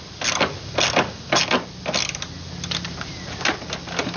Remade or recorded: recorded